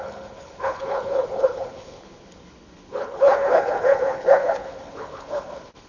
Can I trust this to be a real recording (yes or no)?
no